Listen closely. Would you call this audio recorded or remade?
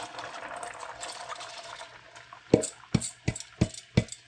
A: recorded